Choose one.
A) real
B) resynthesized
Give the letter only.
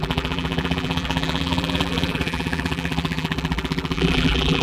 B